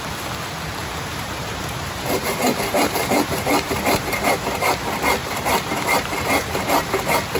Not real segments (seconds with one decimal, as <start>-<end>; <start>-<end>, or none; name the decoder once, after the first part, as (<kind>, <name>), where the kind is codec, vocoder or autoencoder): 0.8-4.7 (vocoder, BigVGAN v2); 5.2-6.9

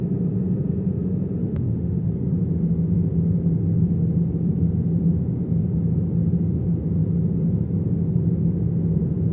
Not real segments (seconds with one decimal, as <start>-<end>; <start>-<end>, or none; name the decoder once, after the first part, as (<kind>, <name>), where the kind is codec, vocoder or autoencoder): 1.4-2.1 (autoencoder, DAC-VAE)

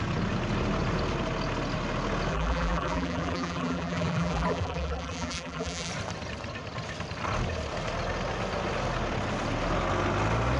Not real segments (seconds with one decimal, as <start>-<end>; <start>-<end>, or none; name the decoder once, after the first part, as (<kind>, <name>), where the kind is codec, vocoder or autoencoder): 2.3-5.9 (vocoder, BigVGAN v2)

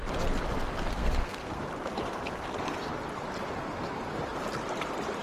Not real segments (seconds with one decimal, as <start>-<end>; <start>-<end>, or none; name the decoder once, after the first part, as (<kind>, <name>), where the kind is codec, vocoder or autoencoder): 0.9-1.6 (codec, SNAC)

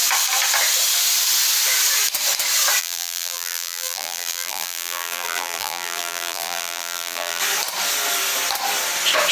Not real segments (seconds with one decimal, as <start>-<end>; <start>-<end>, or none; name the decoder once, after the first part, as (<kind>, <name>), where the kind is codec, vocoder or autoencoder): 2.8-7.4 (vocoder, BigVGAN v2)

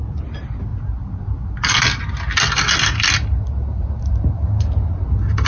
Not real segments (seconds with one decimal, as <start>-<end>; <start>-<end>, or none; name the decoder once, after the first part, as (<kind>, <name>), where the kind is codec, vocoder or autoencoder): none

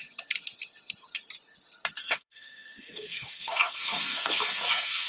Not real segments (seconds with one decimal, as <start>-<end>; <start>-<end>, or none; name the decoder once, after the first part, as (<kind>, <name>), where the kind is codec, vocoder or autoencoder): 2.0-5.1 (codec, SNAC)